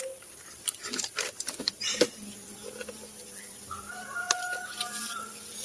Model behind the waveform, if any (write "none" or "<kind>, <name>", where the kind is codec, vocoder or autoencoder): none